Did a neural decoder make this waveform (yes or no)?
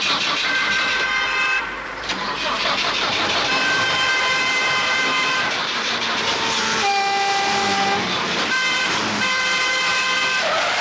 yes